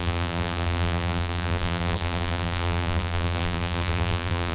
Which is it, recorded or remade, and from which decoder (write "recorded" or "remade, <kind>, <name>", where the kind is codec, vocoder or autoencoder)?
remade, vocoder, BigVGAN v2